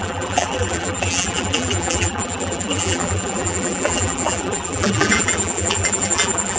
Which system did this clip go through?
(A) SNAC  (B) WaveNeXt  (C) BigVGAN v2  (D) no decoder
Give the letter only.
C